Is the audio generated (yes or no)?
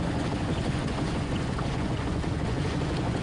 yes